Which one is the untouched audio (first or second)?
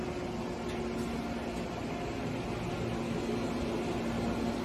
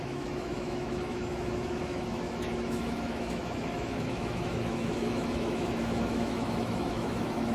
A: first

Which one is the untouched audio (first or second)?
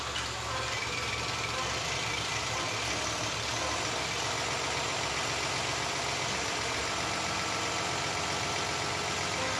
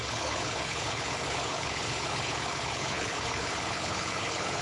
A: first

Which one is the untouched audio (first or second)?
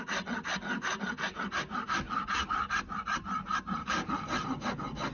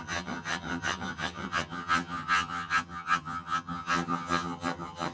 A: first